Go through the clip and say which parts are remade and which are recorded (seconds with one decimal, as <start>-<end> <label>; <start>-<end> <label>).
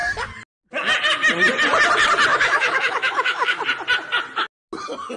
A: 0.0-2.3 recorded; 2.3-3.6 remade; 3.6-5.2 recorded